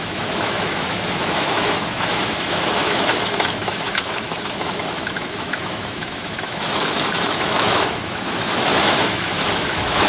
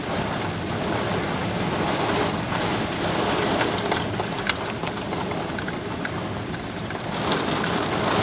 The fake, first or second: first